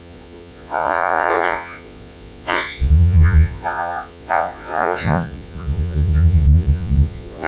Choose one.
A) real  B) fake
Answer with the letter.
B